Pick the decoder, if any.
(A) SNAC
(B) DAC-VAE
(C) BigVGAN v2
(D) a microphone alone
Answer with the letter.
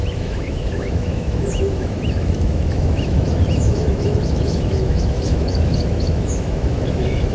B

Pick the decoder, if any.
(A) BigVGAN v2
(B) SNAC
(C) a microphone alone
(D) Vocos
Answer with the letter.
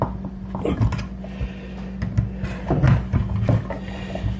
C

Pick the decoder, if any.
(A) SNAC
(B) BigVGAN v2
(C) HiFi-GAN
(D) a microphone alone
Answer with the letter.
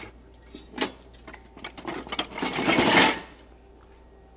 D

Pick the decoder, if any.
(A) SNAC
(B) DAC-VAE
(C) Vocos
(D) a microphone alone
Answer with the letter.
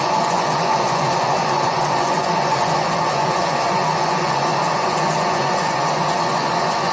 C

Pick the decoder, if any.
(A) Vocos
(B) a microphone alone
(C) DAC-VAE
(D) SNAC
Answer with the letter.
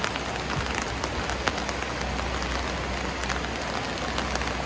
B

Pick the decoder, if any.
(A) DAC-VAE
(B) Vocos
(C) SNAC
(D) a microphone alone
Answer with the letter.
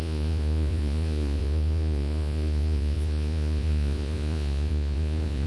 B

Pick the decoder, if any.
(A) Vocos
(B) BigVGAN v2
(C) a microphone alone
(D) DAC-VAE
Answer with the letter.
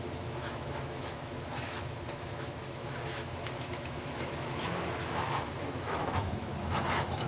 D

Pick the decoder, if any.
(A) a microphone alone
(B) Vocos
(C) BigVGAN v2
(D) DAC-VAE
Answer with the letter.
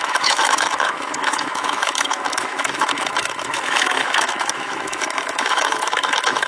D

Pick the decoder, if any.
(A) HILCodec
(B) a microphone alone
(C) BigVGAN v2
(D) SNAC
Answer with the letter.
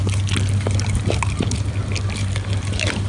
B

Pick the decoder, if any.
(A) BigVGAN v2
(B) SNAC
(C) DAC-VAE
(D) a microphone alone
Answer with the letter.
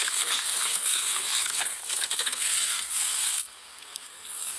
B